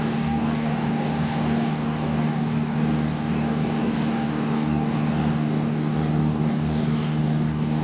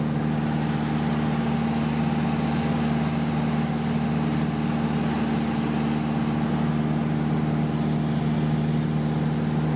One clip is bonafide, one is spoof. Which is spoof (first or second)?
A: first